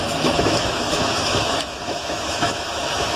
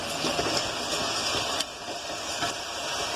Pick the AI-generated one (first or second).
first